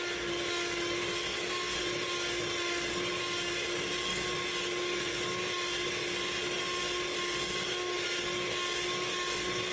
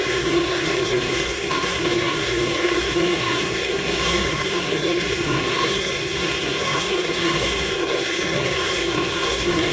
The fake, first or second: second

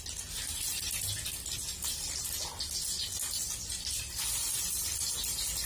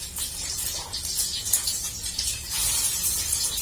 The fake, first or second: second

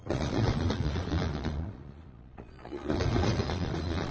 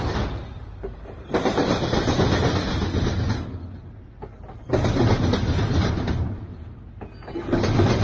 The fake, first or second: first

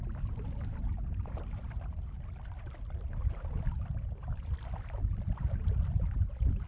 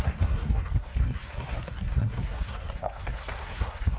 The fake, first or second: second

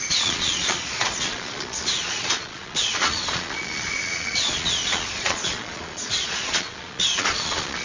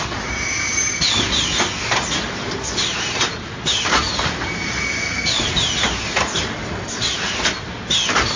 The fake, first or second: first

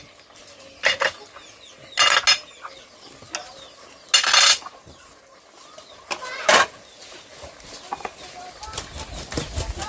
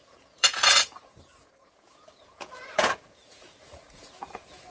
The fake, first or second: second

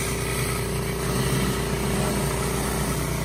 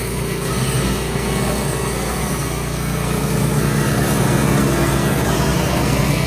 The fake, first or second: second